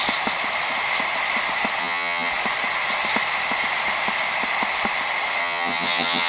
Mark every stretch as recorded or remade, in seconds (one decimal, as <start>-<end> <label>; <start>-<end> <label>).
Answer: 0.0-1.8 recorded; 1.8-2.3 remade; 2.3-5.4 recorded; 5.4-6.3 remade